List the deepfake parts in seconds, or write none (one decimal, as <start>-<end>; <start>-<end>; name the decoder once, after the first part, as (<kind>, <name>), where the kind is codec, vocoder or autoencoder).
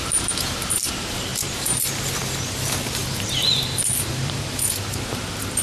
0.0-5.6 (vocoder, BigVGAN v2)